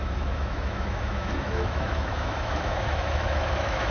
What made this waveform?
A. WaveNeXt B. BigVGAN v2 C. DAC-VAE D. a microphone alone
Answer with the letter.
C